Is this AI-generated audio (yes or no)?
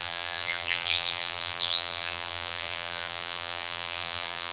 yes